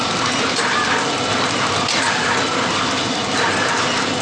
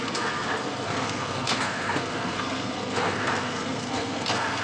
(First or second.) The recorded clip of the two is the first